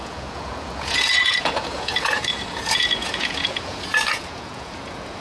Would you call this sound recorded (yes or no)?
no